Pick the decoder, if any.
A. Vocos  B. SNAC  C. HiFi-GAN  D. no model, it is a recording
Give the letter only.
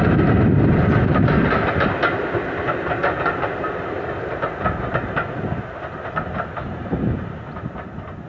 D